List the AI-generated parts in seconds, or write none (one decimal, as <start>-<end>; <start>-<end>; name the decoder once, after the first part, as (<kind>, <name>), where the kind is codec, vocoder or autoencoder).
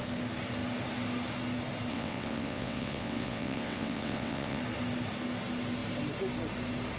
1.9-4.6 (vocoder, WaveNeXt)